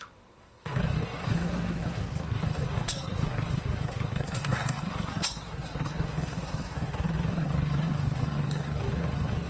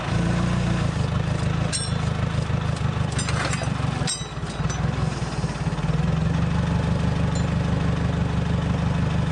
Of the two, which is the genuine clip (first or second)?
second